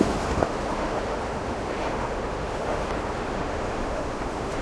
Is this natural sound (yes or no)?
no